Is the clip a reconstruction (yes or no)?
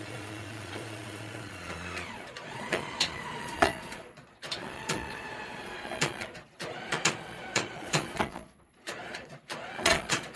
yes